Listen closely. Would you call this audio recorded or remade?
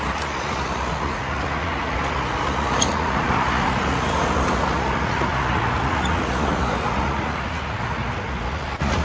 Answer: remade